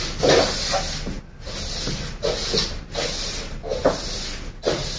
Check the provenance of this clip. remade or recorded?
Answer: recorded